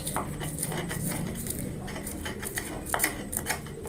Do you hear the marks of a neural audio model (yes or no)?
no